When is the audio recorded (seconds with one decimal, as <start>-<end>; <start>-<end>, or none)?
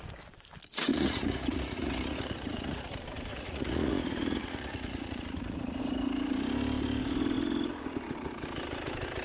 0.0-0.9; 2.9-3.3; 5.8-9.2